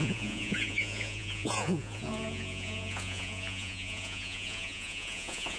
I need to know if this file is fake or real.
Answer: fake